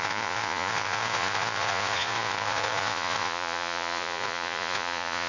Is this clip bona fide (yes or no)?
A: no